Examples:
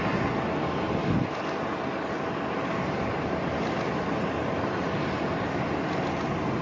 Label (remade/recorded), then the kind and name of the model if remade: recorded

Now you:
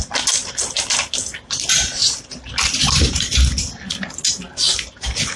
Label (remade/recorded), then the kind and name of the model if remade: recorded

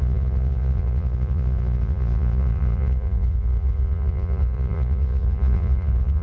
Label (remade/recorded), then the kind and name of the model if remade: remade, vocoder, Vocos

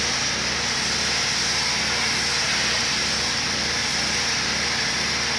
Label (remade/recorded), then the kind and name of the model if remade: recorded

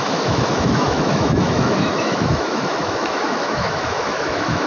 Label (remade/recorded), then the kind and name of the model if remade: remade, autoencoder, DAC-VAE